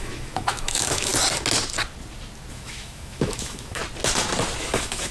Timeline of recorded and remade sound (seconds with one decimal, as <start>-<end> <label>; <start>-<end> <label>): 0.0-1.1 remade; 1.1-2.5 recorded; 2.5-3.8 remade; 3.8-4.6 recorded; 4.6-5.1 remade